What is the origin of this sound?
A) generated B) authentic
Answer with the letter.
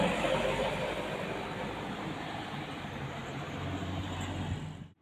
B